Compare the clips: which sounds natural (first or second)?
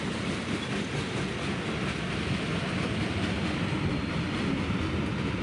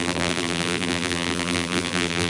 first